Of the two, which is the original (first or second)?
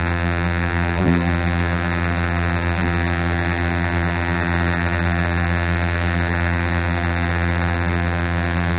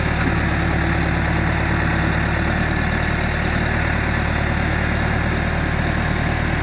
second